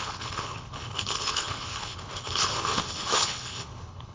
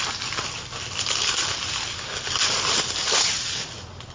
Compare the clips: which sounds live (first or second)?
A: second